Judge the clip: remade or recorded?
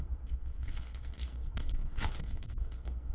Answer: remade